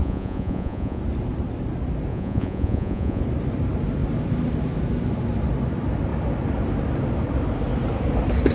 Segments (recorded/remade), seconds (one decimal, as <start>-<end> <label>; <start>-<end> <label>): 0.0-1.0 remade; 1.0-2.1 recorded; 2.1-3.2 remade; 3.2-8.5 recorded